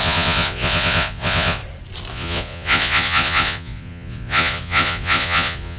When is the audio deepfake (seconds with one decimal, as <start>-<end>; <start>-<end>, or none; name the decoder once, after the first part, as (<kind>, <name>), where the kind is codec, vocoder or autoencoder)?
0.0-1.6 (vocoder, Vocos); 2.1-5.8